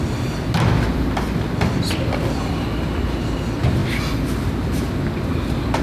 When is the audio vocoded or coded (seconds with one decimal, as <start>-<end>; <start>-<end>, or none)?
none